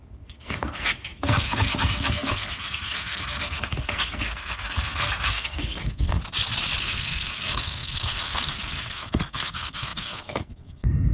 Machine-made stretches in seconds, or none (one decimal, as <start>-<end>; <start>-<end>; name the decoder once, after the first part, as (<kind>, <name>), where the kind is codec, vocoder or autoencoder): 0.0-6.2 (codec, SNAC); 6.8-11.1